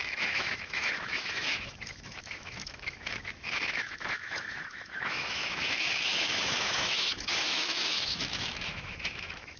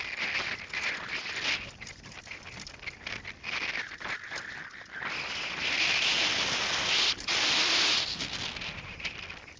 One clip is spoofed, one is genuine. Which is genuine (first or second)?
second